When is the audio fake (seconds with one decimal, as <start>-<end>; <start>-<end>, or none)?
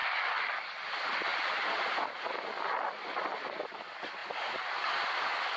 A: none